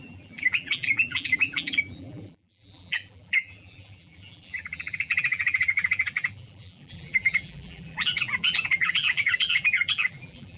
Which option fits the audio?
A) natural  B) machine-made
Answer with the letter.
B